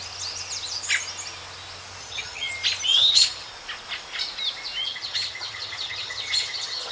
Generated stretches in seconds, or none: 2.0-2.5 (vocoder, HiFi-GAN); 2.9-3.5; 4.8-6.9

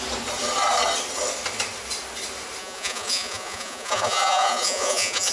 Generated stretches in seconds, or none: 2.6-5.3 (vocoder, Vocos)

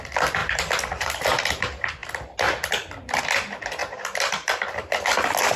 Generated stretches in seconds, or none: 0.4-1.4 (vocoder, BigVGAN v2); 3.8-5.1

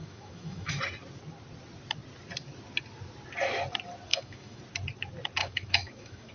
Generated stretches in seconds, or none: 0.0-0.8 (autoencoder, DAC-VAE); 4.1-4.6; 5.4-6.3

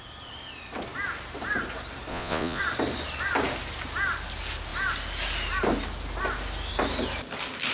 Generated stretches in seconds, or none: 2.1-2.6 (vocoder, Vocos)

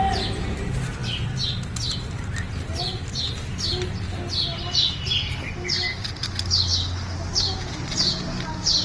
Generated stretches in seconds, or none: none